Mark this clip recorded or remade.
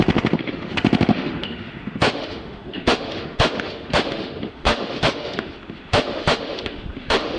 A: remade